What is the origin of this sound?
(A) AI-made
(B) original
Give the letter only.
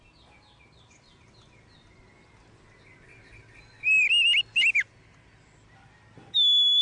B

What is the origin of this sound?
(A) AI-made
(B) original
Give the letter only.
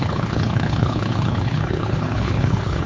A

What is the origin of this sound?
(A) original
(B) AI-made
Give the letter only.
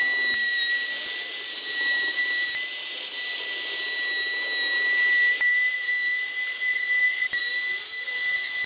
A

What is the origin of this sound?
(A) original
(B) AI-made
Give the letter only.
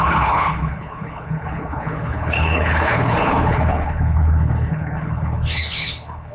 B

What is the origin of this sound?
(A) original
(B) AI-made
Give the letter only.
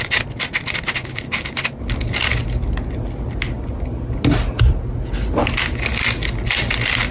A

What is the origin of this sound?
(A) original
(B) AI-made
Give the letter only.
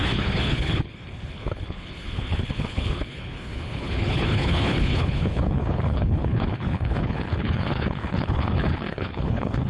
B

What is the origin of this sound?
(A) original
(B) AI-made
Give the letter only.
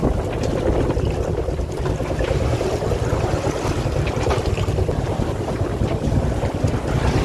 A